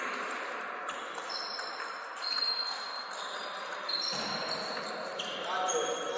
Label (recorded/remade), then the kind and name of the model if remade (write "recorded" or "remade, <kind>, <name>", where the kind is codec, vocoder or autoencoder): recorded